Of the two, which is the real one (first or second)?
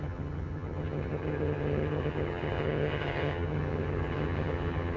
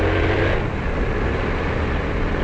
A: second